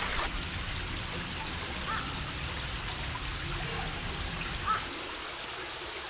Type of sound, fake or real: real